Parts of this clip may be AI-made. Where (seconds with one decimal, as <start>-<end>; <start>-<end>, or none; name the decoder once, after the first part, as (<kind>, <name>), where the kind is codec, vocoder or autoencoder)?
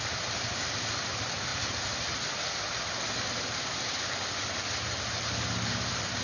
none